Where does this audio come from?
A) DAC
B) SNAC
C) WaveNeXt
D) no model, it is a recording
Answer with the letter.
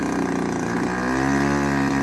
D